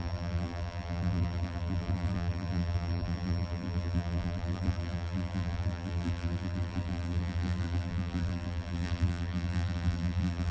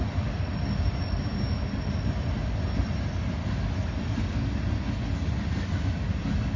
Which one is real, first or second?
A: second